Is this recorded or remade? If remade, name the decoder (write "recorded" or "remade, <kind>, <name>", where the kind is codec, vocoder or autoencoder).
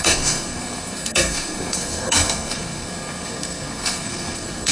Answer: remade, codec, SNAC